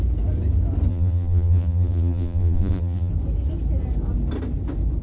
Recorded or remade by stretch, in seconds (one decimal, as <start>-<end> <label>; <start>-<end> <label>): 0.0-0.9 recorded; 0.9-3.1 remade; 3.1-5.0 recorded